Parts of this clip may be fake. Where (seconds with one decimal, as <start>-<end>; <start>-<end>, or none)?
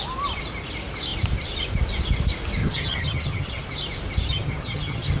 2.6-3.6; 4.3-5.2